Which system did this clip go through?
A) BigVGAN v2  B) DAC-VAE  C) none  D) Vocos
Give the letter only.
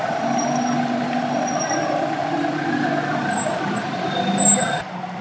C